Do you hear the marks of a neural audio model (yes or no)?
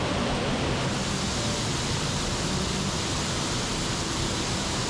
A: no